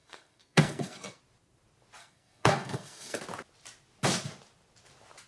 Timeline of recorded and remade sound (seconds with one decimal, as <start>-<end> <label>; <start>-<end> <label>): 0.0-1.2 remade; 1.2-2.0 recorded; 2.0-3.2 remade; 3.2-5.3 recorded